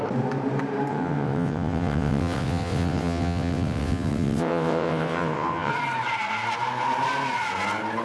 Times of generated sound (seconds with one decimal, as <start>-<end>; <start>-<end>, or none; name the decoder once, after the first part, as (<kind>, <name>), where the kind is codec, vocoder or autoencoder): 0.9-5.7 (vocoder, WaveNeXt)